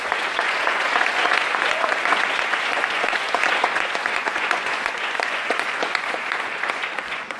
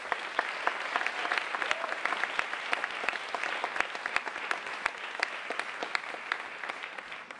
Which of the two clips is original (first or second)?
second